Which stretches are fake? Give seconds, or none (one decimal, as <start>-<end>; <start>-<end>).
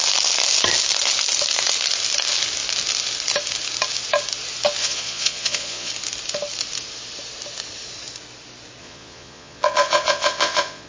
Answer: 4.8-5.9; 8.8-10.9